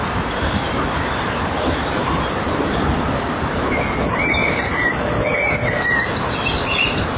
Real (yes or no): no